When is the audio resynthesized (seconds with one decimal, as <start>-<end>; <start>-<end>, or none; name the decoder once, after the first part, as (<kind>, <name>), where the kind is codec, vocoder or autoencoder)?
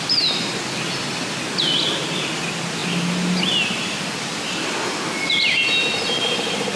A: none